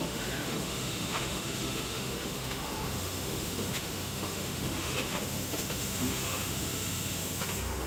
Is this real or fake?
fake